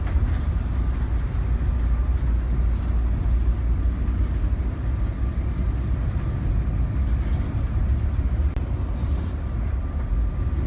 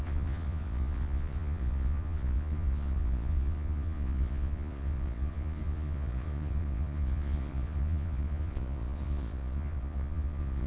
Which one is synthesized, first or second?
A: second